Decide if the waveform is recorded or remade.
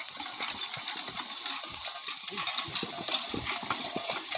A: recorded